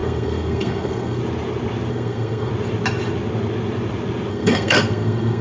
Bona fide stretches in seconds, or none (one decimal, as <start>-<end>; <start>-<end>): 1.2-1.9; 2.5-4.3